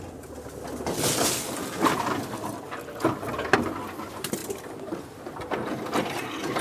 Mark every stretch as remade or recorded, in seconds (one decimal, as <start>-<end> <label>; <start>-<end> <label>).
0.0-6.6 recorded